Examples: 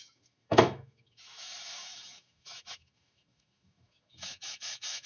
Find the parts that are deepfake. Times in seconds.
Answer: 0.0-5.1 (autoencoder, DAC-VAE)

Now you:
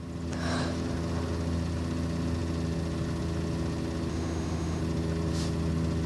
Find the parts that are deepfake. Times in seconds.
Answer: 4.1-4.8 (autoencoder, DAC-VAE)

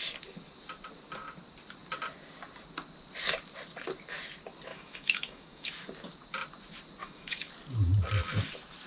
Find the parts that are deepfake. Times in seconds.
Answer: 4.7-5.7 (autoencoder, DAC-VAE); 7.0-7.5

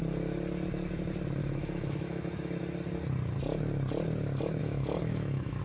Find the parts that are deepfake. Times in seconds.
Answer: 1.4-2.6 (autoencoder, DAC-VAE); 4.6-5.6

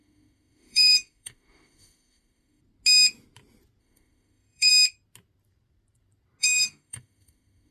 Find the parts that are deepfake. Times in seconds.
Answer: 0.0-2.6 (autoencoder, DAC-VAE); 3.8-4.7; 6.4-7.7